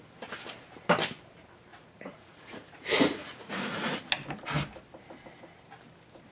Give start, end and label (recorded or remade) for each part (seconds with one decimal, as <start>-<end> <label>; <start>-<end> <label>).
0.0-1.7 recorded; 1.7-4.0 remade; 4.0-6.3 recorded